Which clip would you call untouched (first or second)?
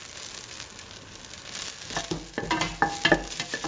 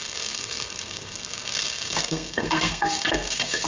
first